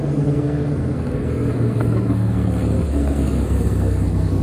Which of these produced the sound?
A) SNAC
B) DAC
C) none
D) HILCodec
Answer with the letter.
A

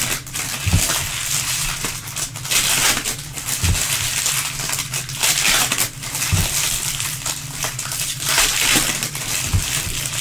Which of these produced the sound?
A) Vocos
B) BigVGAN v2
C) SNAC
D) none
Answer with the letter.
D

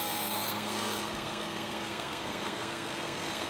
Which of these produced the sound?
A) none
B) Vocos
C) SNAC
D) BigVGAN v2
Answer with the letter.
C